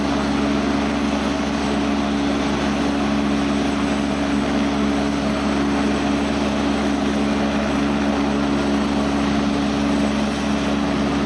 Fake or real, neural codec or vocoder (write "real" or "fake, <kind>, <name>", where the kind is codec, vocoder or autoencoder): real